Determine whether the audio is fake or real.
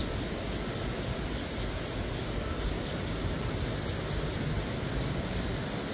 real